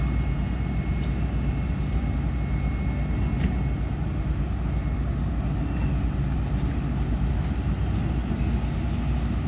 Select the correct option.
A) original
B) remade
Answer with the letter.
A